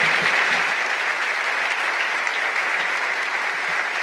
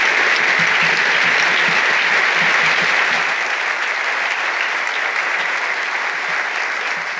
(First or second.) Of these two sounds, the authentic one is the second